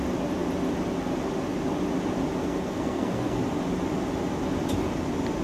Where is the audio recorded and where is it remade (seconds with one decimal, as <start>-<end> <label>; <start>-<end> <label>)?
0.0-2.4 recorded; 2.4-3.4 remade; 3.4-5.4 recorded